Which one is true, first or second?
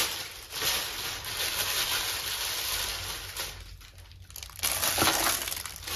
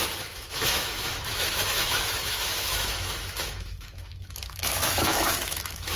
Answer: first